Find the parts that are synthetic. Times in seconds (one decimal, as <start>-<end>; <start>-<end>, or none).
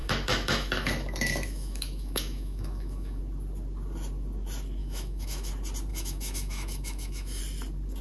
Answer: 0.0-3.2; 4.8-5.5; 5.9-7.4